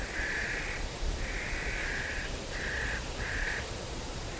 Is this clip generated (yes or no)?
yes